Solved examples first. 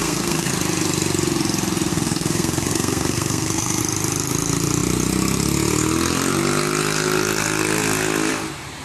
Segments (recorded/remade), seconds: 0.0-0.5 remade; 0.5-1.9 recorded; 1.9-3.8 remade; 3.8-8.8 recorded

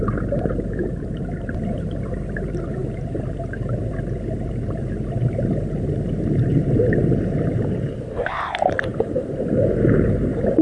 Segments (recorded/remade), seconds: 0.0-8.9 remade; 8.9-10.0 recorded; 10.0-10.6 remade

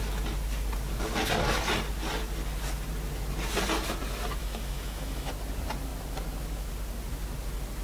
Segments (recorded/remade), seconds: 0.0-4.4 recorded; 4.4-5.3 remade; 5.3-7.8 recorded

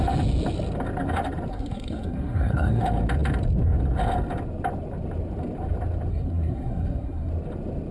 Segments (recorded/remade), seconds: 0.0-1.5 recorded; 1.5-2.8 remade; 2.8-6.1 recorded; 6.1-7.3 remade; 7.3-7.9 recorded

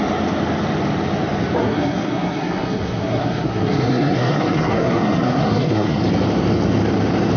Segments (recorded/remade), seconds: 0.0-1.6 recorded; 1.6-6.0 remade; 6.0-7.4 recorded